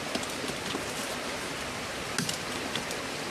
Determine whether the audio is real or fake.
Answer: real